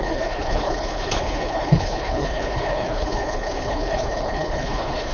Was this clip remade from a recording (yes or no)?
yes